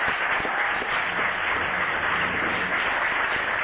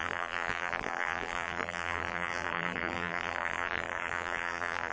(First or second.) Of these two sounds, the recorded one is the first